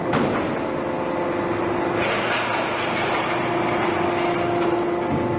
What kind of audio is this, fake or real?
real